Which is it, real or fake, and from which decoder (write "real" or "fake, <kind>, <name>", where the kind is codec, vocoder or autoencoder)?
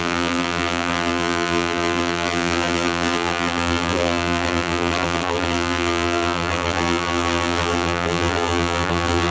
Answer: fake, vocoder, BigVGAN v2